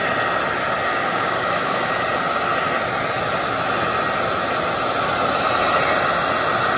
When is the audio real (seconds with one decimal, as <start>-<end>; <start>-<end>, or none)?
0.0-0.9; 1.9-6.8